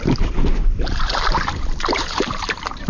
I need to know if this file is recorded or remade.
remade